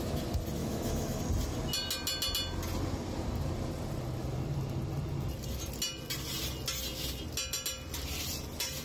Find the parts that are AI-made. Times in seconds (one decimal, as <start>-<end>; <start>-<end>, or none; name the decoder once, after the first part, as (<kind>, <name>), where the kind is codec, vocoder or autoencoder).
0.6-1.2 (autoencoder, DAC-VAE)